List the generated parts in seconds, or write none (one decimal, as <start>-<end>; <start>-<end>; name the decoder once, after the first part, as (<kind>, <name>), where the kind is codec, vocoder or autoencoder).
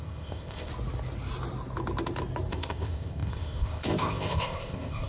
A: 0.0-0.7 (codec, ZipCodec); 2.5-5.1